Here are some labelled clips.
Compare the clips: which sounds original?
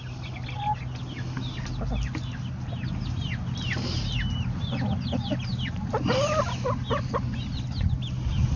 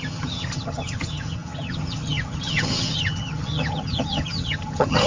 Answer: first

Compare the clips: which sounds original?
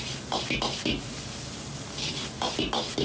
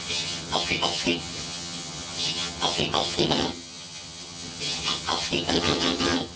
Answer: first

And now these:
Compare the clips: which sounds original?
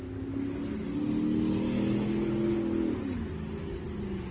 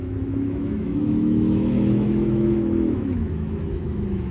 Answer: first